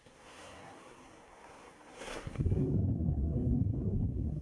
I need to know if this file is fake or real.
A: fake